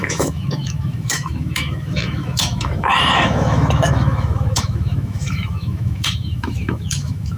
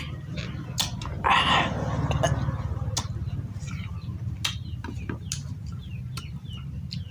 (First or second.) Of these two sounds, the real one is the second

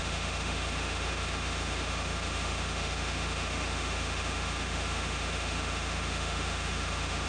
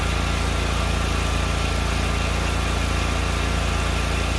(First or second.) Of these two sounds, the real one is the second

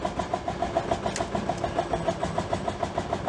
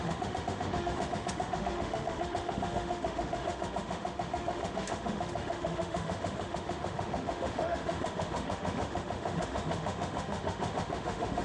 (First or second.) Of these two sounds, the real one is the first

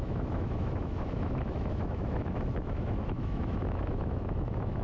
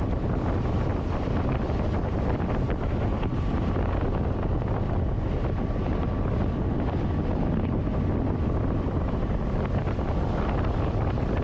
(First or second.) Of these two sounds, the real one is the second